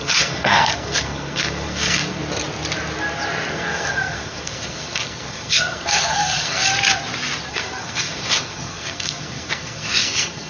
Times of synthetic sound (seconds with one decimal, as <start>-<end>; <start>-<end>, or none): 0.0-2.2; 3.5-6.7; 7.5-10.5